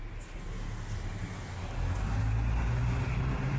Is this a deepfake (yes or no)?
no